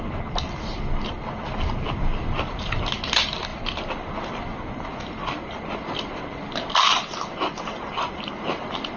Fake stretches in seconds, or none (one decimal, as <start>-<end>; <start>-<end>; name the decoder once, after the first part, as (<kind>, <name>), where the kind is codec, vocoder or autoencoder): none